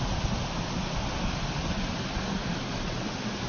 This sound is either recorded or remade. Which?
recorded